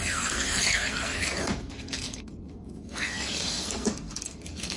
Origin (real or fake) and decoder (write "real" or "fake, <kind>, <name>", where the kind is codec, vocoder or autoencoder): fake, codec, SNAC